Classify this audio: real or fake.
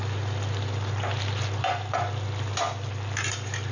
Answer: real